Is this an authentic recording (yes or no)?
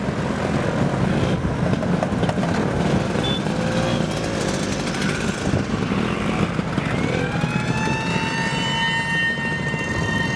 yes